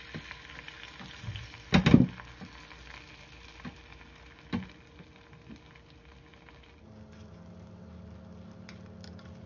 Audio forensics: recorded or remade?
recorded